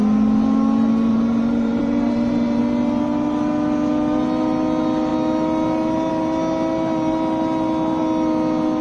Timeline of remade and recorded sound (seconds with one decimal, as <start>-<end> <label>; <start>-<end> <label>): 0.0-1.1 recorded; 1.1-2.6 remade; 2.6-8.8 recorded